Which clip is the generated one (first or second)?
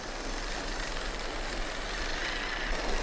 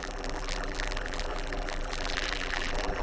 second